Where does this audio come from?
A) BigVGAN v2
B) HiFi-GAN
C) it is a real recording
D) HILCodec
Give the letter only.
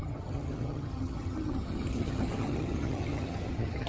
B